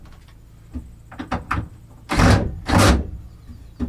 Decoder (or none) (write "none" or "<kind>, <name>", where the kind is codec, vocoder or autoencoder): none